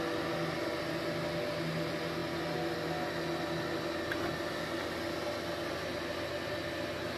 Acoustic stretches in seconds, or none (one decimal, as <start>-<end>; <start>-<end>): 0.0-7.2